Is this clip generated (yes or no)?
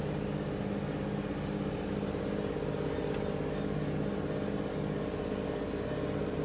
no